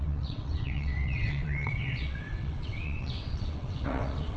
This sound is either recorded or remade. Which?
remade